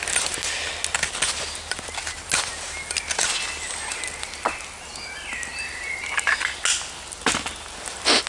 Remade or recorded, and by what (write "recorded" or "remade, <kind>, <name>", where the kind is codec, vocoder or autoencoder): recorded